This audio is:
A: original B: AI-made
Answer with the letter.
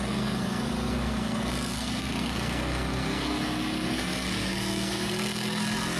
B